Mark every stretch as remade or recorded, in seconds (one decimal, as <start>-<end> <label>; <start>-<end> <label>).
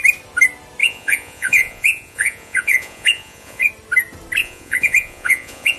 0.0-0.8 recorded; 0.8-3.7 remade; 3.7-4.4 recorded; 4.4-5.8 remade